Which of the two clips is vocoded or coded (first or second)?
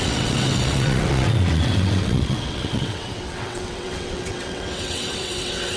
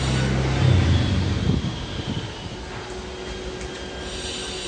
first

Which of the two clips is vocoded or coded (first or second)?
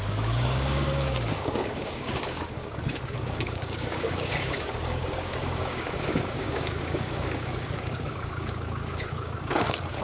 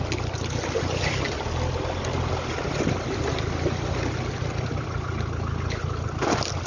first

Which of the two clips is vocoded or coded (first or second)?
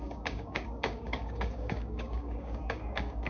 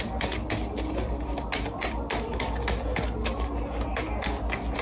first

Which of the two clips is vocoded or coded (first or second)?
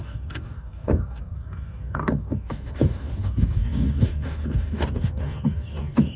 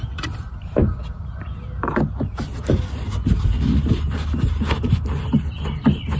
first